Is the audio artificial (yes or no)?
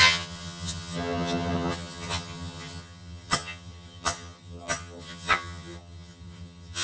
yes